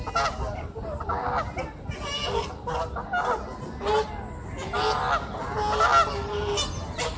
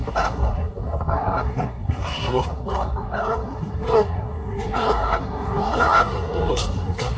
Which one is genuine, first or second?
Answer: first